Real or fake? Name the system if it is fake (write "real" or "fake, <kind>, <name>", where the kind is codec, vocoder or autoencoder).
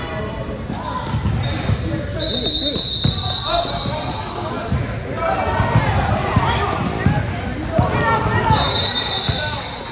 real